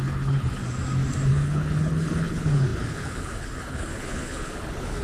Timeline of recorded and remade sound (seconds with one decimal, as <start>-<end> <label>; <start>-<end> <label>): 0.0-0.6 remade; 0.6-1.3 recorded; 1.3-5.0 remade